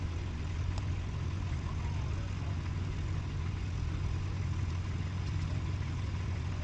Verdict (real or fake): fake